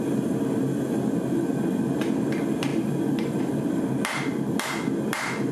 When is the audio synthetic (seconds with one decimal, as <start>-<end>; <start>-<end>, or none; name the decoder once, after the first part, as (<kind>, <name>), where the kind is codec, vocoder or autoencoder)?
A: 2.7-3.4 (vocoder, BigVGAN v2)